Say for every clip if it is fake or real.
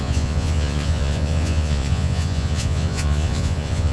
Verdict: fake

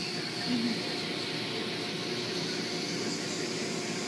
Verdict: real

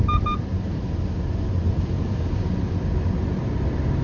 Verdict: real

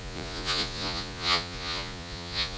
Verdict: fake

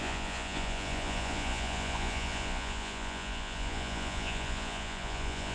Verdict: fake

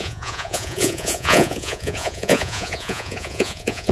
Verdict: fake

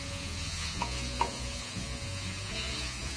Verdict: fake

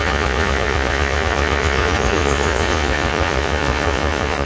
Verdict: fake